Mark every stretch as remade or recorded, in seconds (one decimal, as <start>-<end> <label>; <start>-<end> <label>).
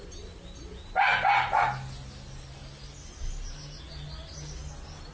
0.0-5.1 recorded